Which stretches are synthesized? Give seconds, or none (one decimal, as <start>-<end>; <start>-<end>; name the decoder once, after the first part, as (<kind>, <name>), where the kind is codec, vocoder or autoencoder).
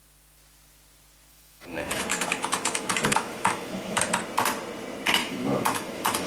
1.3-4.0 (autoencoder, DAC-VAE); 5.2-6.3